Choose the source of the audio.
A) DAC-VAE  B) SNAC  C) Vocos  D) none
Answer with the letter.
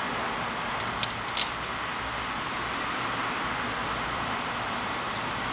D